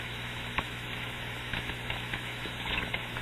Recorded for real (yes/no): no